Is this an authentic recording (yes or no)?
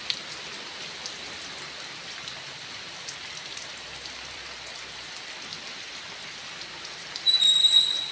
no